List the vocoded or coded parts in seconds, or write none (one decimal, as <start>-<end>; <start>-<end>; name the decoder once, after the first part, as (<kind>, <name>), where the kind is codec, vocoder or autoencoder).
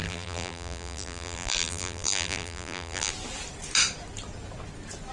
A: 0.0-3.1 (vocoder, BigVGAN v2)